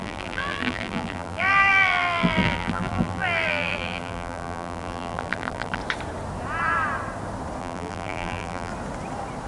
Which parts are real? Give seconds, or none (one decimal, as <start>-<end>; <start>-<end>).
5.8-7.6; 8.7-9.5